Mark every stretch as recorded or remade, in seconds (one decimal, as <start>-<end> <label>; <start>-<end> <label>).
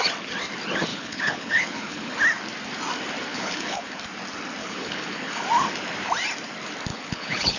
0.0-0.9 recorded; 0.9-2.1 remade; 2.1-3.3 recorded; 3.3-4.0 remade; 4.0-4.6 recorded; 4.6-5.4 remade; 5.4-6.9 recorded; 6.9-7.6 remade